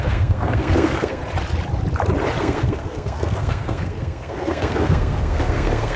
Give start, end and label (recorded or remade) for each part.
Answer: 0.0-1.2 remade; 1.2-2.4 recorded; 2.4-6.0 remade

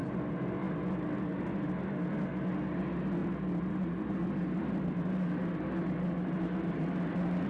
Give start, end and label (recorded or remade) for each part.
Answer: 0.0-7.5 recorded

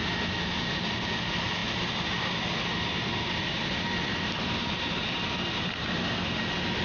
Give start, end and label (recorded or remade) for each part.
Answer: 0.0-6.8 recorded